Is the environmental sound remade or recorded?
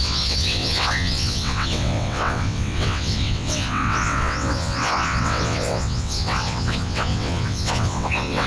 remade